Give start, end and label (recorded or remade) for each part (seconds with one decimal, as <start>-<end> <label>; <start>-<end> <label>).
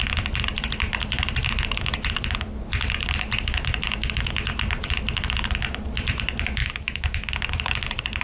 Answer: 0.0-6.6 recorded; 6.6-7.3 remade; 7.3-8.2 recorded